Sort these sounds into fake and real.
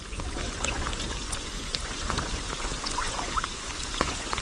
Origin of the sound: fake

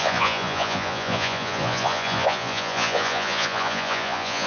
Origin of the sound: fake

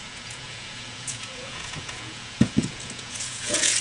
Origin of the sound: fake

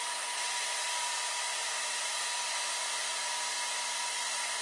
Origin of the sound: real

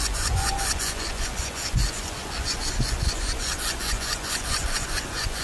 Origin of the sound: fake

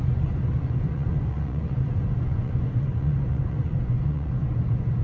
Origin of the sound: fake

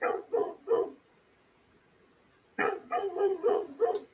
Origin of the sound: fake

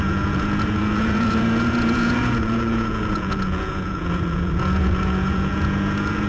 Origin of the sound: fake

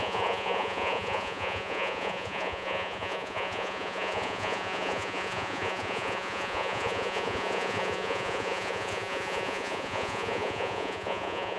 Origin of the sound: fake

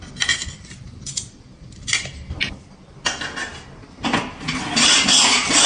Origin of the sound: real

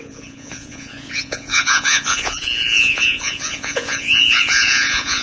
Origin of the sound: fake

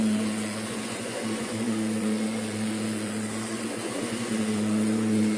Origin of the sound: fake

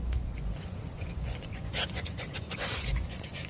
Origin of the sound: fake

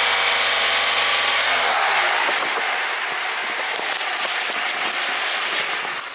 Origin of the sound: real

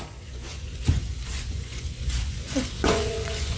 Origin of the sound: fake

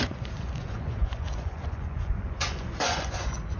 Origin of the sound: fake